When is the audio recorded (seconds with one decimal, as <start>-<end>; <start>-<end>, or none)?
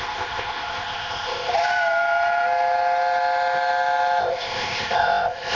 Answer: 1.5-4.2